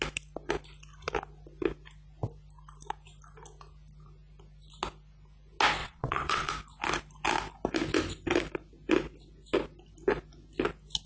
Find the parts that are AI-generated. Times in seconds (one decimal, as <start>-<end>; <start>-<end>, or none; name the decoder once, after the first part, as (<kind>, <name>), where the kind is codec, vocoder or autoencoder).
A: 5.8-6.5 (vocoder, WaveNeXt)